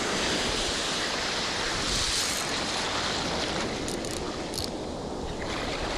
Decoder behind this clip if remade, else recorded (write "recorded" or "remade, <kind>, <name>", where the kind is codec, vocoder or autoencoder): recorded